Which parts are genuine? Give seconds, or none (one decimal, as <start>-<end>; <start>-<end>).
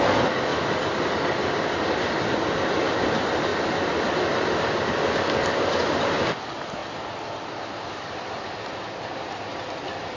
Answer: 0.0-0.5; 2.3-6.8; 9.6-10.2